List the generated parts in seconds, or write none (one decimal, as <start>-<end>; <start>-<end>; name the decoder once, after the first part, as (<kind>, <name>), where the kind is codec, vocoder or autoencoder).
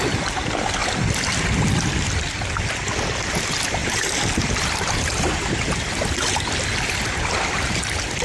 none